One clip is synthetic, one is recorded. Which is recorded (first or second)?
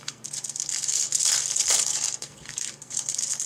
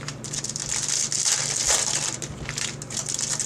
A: second